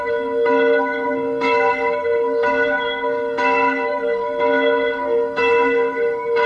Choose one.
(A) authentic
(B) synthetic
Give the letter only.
B